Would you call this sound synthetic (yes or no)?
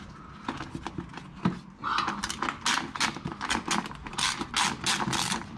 no